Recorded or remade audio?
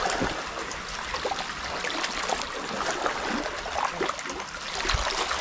recorded